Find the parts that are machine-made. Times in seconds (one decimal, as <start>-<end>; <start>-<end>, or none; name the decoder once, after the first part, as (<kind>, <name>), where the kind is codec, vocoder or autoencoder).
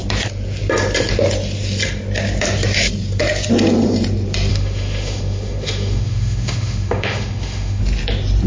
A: 4.5-7.8 (autoencoder, DAC-VAE)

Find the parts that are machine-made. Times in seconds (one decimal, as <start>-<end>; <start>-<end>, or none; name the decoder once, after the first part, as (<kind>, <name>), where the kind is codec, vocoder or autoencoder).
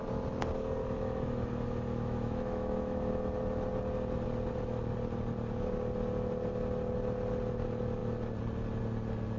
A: 0.8-3.1 (autoencoder, DAC-VAE)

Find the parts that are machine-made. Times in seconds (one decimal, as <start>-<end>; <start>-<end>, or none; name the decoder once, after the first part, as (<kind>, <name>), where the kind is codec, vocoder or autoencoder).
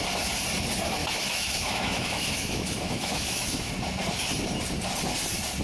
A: 1.0-3.7 (autoencoder, DAC-VAE)